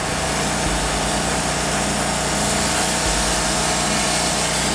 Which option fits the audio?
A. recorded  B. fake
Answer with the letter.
A